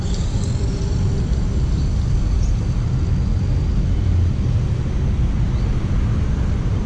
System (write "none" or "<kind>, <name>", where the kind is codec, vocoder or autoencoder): vocoder, BigVGAN v2